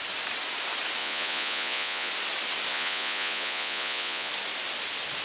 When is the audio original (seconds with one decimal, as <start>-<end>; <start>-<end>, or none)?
0.0-1.0; 2.1-2.7; 4.3-5.2